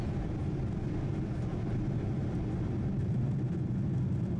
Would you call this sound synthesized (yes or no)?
no